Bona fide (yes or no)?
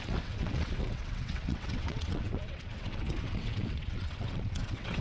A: no